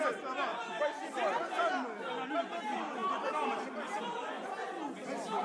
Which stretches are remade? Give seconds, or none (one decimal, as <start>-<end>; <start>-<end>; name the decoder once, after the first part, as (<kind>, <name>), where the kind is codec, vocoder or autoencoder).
none